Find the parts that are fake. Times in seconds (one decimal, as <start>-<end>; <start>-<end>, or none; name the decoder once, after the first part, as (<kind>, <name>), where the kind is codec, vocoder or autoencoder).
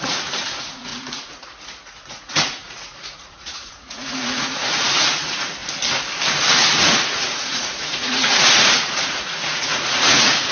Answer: 0.0-5.6 (vocoder, Vocos); 6.3-10.5